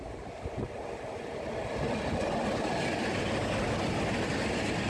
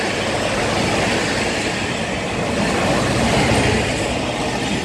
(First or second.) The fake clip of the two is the first